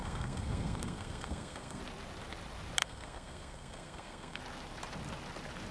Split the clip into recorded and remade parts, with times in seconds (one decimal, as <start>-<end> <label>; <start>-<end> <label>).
0.0-1.8 remade; 1.8-2.8 recorded; 2.8-4.4 remade; 4.4-5.7 recorded